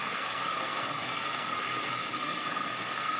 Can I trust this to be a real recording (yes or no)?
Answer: no